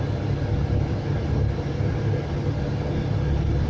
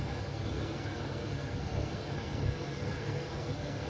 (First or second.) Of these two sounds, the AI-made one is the second